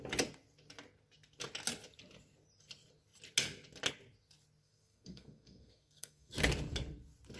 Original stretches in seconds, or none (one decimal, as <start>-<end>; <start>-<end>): 0.0-4.6; 6.3-7.4

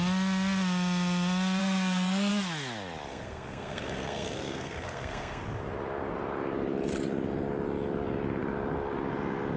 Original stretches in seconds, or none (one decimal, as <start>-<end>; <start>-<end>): 0.0-1.6; 2.3-3.1; 5.4-9.6

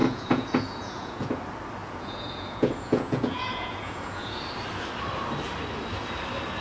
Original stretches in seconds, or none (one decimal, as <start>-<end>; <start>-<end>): 1.4-1.8; 4.4-6.6

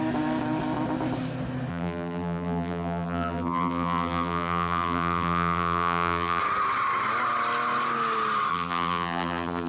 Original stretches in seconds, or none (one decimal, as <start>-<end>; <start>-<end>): 0.0-1.7; 6.4-8.5

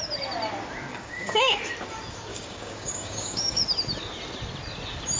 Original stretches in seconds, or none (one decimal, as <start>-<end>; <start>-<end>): 0.0-0.9; 1.6-2.3; 3.6-5.2